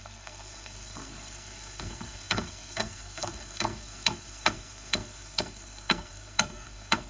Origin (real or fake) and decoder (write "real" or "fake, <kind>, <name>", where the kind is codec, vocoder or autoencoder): fake, codec, SNAC